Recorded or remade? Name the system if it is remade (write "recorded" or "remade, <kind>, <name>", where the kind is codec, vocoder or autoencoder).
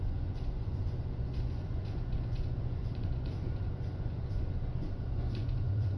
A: remade, vocoder, Vocos